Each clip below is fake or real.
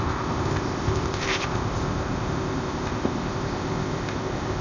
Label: fake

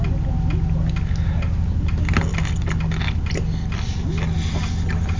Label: real